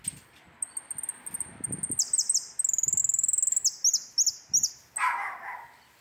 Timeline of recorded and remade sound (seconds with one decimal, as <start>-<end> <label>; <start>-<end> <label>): 0.0-6.0 recorded